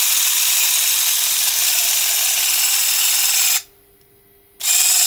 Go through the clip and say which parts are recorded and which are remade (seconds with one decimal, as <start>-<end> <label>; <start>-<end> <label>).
0.0-5.1 recorded